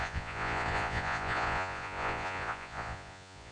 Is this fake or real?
fake